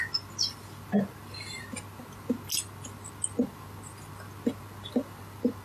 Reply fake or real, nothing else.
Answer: real